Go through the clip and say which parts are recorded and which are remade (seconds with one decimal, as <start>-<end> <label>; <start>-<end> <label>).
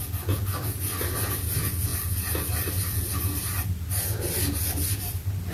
0.0-5.5 recorded